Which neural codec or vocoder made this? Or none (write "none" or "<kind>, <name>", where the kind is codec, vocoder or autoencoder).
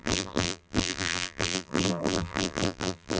vocoder, BigVGAN v2